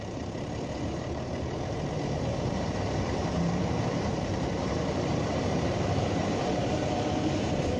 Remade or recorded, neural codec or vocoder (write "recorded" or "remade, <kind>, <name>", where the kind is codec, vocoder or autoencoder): remade, vocoder, BigVGAN v2